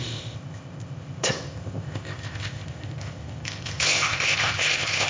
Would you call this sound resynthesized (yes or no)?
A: yes